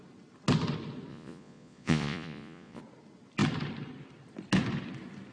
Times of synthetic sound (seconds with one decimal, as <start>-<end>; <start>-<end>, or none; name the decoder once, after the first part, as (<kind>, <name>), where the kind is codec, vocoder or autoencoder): 1.1-2.8 (vocoder, Vocos)